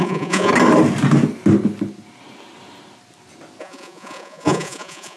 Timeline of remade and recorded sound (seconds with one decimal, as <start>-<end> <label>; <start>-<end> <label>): 0.0-0.5 remade; 0.5-3.6 recorded; 3.6-5.2 remade

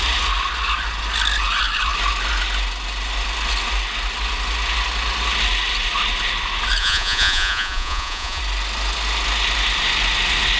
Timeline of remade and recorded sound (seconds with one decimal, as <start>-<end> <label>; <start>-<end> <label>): 0.0-6.8 recorded; 6.8-8.4 remade; 8.4-10.6 recorded

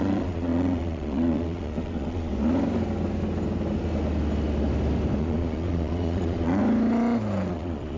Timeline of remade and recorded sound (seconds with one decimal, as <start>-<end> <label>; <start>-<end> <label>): 0.0-2.3 remade; 2.3-5.2 recorded; 5.2-6.6 remade; 6.6-7.5 recorded; 7.5-8.0 remade